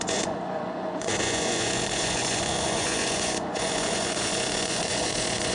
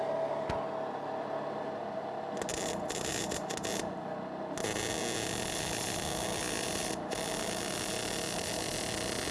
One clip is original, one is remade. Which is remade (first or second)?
first